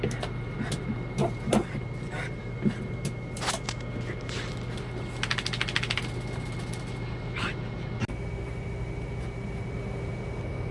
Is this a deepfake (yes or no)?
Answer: no